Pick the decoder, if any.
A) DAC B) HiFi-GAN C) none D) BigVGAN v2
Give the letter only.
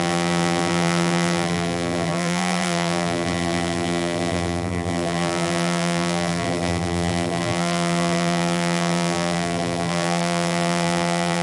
D